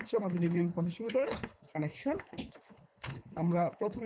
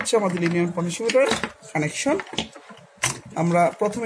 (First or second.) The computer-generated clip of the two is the first